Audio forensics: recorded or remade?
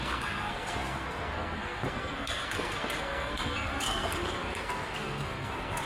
remade